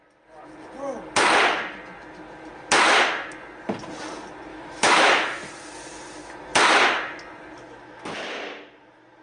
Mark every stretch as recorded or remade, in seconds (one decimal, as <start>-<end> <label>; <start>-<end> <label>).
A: 0.0-4.5 recorded; 4.5-5.5 remade; 5.5-9.2 recorded